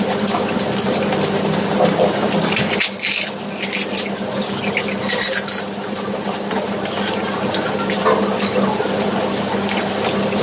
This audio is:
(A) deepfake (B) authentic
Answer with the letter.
B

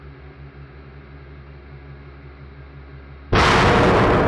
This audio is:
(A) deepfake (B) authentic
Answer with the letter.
B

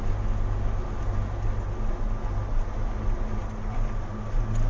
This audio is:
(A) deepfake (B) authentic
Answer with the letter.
B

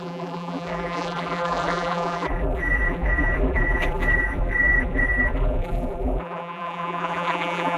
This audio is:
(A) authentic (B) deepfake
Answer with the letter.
B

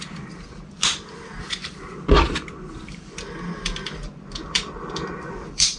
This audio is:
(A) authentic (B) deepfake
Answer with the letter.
B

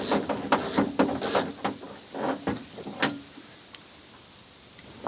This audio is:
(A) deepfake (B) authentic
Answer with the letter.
B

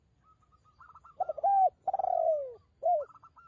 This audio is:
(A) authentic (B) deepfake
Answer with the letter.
A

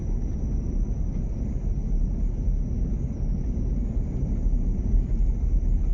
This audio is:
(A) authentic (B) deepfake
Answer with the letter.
A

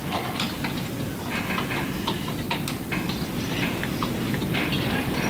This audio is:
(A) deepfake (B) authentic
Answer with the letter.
B